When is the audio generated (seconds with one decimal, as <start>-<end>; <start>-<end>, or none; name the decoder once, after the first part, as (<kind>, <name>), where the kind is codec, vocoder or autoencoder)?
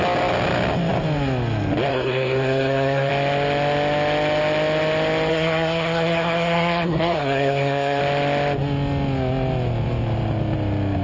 1.9-3.1 (codec, SNAC); 5.3-8.0